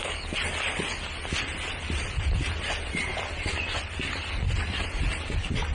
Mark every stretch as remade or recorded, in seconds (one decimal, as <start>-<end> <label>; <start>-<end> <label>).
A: 0.0-5.7 recorded